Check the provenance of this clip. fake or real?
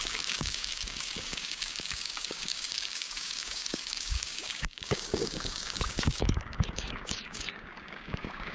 fake